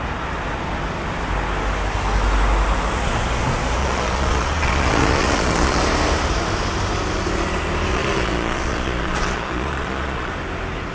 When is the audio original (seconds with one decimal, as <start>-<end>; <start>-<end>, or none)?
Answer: 0.0-3.8; 5.8-7.9; 10.3-10.9